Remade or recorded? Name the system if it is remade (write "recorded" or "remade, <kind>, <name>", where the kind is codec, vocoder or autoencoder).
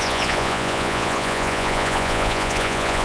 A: remade, vocoder, Vocos